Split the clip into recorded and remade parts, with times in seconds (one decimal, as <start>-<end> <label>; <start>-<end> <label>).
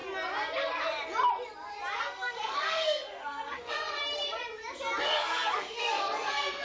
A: 0.0-2.0 recorded; 2.0-4.0 remade; 4.0-5.0 recorded; 5.0-6.6 remade